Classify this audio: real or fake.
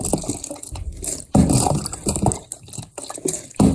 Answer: real